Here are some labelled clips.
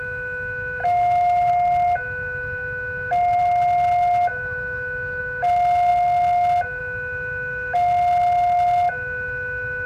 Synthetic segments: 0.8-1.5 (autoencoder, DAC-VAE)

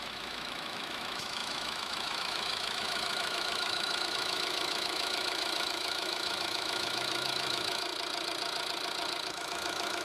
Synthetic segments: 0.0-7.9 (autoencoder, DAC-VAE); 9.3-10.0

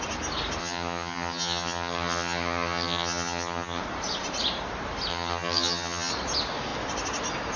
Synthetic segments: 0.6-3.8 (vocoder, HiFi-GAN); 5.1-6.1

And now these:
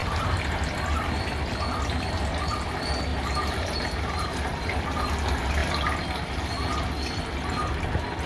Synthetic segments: 0.0-0.6 (vocoder, BigVGAN v2); 3.1-4.8

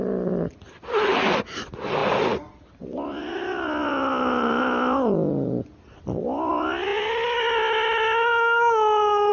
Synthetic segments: none

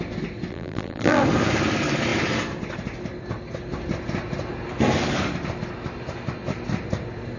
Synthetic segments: 0.5-1.2 (vocoder, BigVGAN v2)

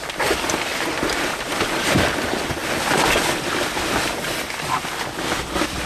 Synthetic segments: none

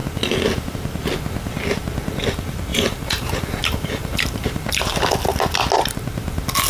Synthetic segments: 2.7-5.0 (vocoder, BigVGAN v2)